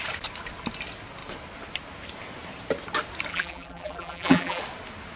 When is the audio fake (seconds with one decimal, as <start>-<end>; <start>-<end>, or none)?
3.3-4.6